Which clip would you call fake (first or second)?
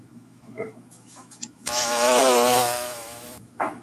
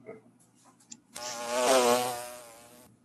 first